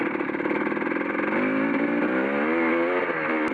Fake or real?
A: real